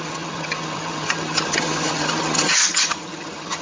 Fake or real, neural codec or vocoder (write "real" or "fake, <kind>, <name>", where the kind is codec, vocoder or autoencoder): fake, vocoder, HiFi-GAN